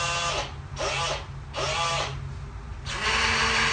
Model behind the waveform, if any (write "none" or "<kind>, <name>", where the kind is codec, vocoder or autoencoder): none